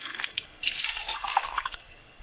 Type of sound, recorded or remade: remade